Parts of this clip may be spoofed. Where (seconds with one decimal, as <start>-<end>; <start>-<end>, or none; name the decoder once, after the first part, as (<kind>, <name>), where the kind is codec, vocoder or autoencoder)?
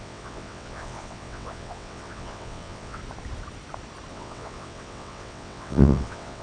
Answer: 0.0-3.0 (vocoder, WaveNeXt); 4.1-6.4